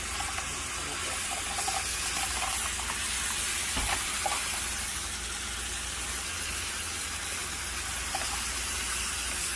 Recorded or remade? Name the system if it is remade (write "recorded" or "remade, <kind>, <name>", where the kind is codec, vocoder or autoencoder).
recorded